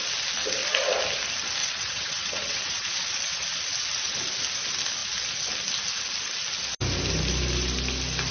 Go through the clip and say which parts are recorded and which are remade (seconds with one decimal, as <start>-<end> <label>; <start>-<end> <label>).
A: 0.0-1.6 recorded; 1.6-3.2 remade; 3.2-8.3 recorded

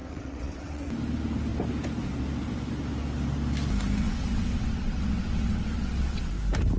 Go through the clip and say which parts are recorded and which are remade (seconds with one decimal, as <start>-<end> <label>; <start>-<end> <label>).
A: 0.0-0.8 remade; 0.8-4.0 recorded; 4.0-6.3 remade; 6.3-6.8 recorded

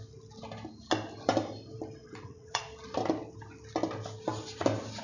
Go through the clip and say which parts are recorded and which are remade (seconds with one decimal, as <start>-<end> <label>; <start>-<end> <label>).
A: 0.0-2.0 recorded; 2.0-2.6 remade; 2.6-5.0 recorded

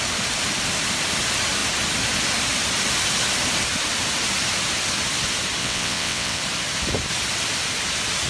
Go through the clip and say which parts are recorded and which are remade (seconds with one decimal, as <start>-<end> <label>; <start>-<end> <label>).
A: 0.0-5.6 recorded; 5.6-6.4 remade; 6.4-8.3 recorded

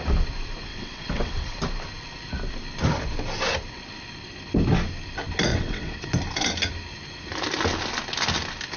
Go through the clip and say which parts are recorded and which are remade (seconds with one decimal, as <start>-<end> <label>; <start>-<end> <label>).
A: 0.0-0.7 recorded; 0.7-1.6 remade; 1.6-5.5 recorded; 5.5-6.1 remade; 6.1-8.8 recorded

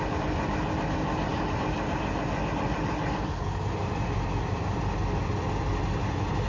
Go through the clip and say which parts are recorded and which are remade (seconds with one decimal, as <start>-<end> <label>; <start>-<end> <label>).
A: 0.0-6.5 recorded

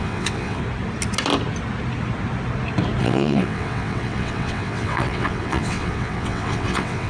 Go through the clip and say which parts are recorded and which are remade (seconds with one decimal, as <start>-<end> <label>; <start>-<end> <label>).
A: 0.0-0.6 remade; 0.6-3.0 recorded; 3.0-7.1 remade